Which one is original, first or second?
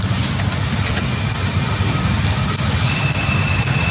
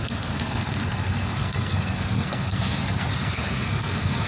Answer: first